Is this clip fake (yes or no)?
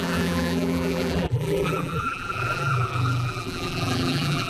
yes